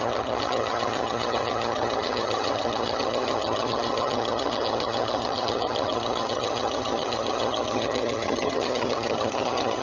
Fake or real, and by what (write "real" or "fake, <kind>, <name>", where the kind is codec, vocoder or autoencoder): fake, vocoder, HiFi-GAN